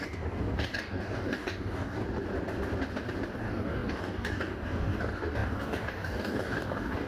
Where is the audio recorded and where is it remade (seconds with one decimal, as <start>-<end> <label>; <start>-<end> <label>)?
0.0-2.0 remade; 2.0-3.4 recorded; 3.4-7.1 remade